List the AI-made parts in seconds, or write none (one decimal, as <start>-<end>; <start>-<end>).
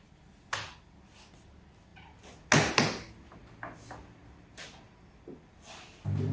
none